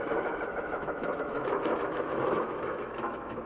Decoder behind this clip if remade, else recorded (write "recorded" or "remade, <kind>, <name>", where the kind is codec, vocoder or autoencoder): remade, autoencoder, DAC-VAE